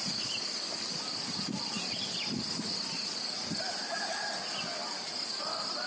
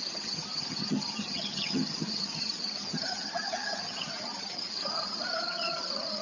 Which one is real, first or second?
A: first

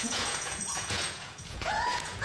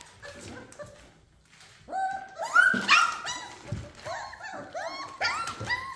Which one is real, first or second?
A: second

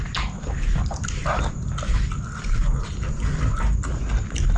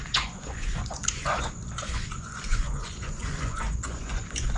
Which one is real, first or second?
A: first